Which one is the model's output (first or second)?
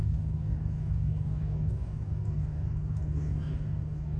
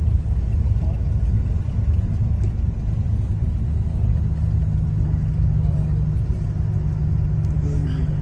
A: first